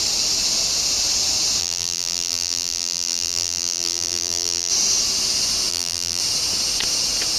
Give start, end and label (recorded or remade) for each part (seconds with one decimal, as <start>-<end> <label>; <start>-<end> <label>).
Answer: 0.0-1.6 recorded; 1.6-4.7 remade; 4.7-5.7 recorded; 5.7-6.2 remade; 6.2-7.4 recorded